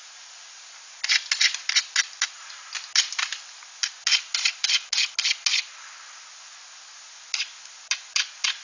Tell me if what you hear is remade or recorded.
recorded